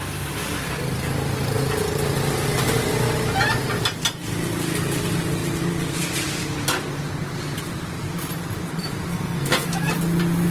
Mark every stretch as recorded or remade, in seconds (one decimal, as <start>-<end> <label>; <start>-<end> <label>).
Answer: 0.0-9.1 recorded; 9.1-9.9 remade; 9.9-10.5 recorded